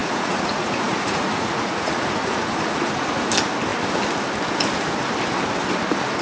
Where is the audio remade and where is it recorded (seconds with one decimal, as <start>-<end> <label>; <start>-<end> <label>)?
0.0-3.3 remade; 3.3-6.2 recorded